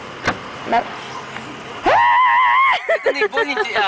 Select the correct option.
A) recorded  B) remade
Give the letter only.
A